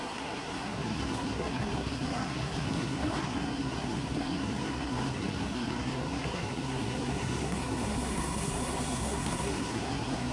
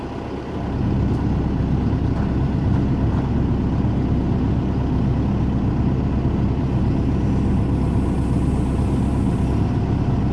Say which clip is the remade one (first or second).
first